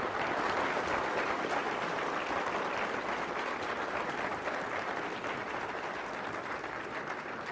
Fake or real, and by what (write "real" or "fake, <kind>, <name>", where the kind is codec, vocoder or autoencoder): real